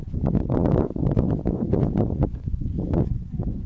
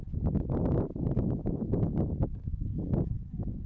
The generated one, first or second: first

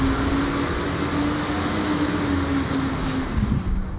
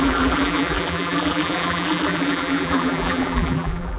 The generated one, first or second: second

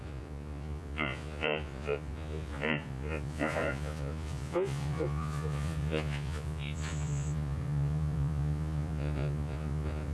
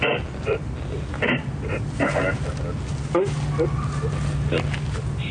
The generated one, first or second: first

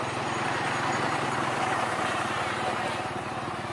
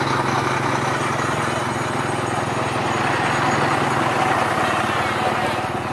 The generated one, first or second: first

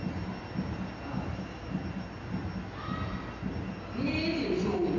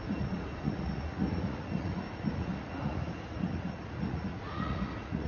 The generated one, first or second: second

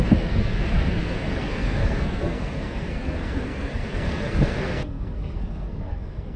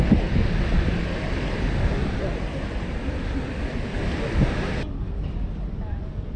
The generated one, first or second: first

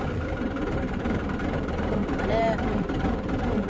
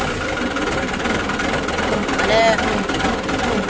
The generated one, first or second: first